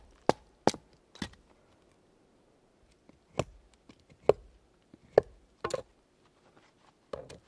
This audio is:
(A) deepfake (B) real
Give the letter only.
B